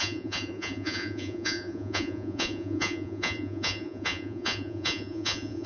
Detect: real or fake fake